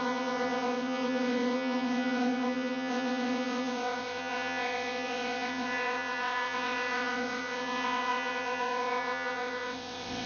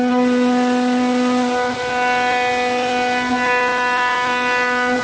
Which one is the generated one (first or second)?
first